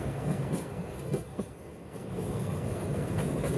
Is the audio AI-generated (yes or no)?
yes